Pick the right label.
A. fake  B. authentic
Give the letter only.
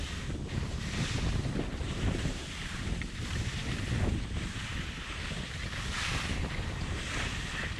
B